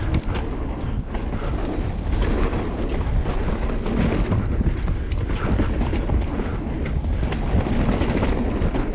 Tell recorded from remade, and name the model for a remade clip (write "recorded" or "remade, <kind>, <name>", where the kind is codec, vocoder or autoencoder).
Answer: recorded